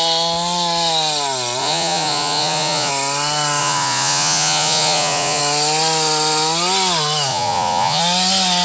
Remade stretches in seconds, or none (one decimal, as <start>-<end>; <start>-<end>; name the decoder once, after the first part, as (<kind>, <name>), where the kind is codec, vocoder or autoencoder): 1.6-2.9 (vocoder, Vocos); 3.6-5.4; 7.3-8.0

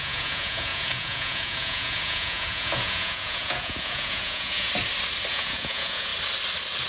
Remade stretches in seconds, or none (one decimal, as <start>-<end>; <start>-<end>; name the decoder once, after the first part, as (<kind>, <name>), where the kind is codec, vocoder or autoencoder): 0.0-4.7 (vocoder, Vocos); 5.3-6.1